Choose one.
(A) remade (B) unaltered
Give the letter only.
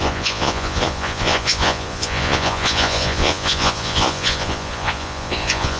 A